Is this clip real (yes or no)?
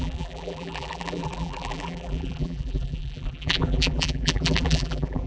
no